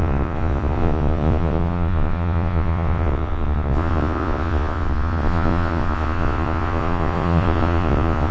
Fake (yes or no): yes